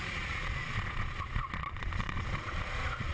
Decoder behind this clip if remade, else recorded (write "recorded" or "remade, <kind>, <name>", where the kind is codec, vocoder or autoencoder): remade, vocoder, Vocos